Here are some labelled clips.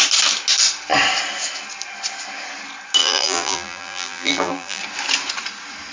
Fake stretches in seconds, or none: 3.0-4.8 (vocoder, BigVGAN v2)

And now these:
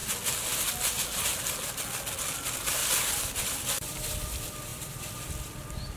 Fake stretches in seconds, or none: 2.1-2.8 (vocoder, BigVGAN v2); 3.4-6.0

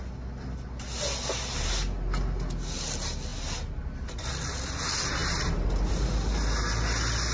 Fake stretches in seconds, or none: none

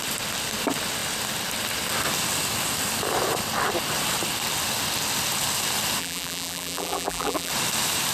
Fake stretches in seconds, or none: 6.0-7.5 (vocoder, BigVGAN v2)

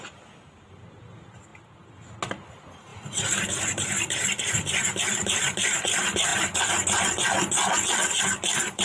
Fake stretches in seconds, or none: 0.0-1.5 (vocoder, BigVGAN v2); 2.5-6.3; 8.2-8.8

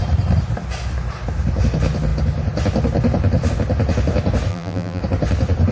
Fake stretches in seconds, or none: 4.5-5.0 (vocoder, BigVGAN v2)